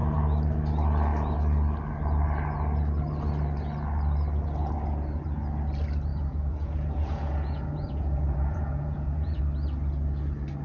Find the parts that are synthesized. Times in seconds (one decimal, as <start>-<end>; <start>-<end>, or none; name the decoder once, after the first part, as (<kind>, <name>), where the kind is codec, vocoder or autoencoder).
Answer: 6.1-9.4 (vocoder, Vocos)